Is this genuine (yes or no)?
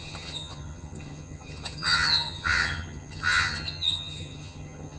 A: no